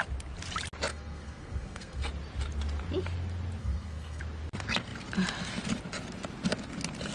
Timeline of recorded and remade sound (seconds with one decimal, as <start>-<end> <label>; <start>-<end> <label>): 0.0-0.9 recorded; 0.9-2.1 remade; 2.1-3.6 recorded; 3.6-4.2 remade; 4.2-7.1 recorded